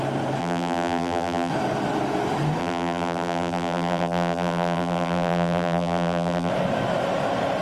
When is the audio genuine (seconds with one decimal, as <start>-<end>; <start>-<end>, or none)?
0.0-0.4; 1.5-2.6; 6.5-7.6